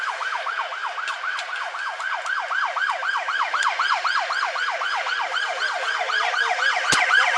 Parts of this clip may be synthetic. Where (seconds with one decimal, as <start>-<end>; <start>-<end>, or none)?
none